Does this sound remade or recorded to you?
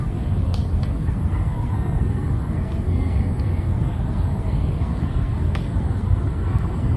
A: remade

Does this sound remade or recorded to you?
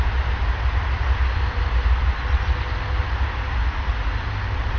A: recorded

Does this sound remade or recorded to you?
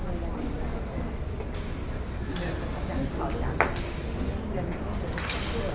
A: recorded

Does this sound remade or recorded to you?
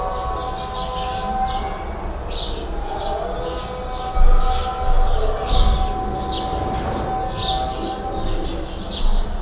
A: recorded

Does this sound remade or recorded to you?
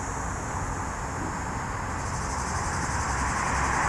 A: recorded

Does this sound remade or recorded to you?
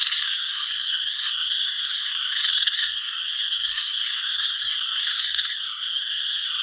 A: remade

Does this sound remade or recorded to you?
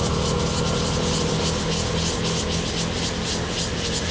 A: recorded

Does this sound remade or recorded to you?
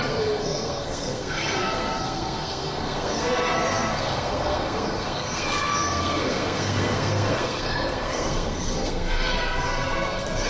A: remade